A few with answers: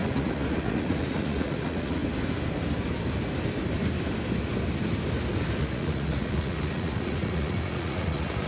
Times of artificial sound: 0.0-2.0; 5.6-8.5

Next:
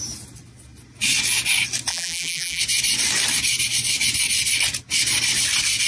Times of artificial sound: 1.9-2.6

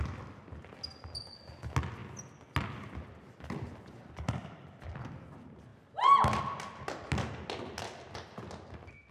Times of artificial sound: 4.4-4.9